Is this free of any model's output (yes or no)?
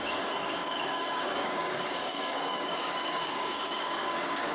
no